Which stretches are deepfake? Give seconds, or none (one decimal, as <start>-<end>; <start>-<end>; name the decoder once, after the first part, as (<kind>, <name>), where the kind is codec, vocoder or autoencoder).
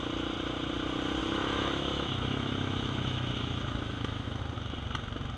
1.2-4.4 (autoencoder, DAC-VAE)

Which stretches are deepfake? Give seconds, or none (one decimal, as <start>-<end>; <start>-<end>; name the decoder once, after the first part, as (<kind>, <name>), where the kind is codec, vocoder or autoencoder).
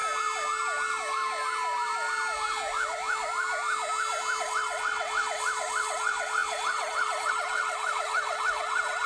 4.4-9.1 (vocoder, WaveNeXt)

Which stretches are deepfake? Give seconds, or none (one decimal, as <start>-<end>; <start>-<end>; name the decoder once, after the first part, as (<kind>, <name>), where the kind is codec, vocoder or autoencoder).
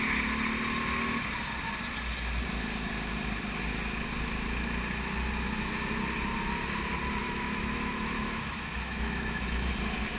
7.2-9.7 (autoencoder, DAC-VAE)